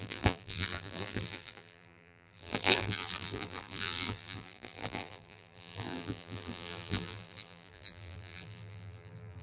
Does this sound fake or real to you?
fake